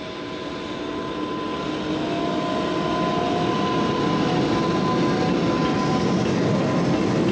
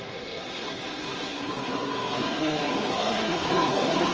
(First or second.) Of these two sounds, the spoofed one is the second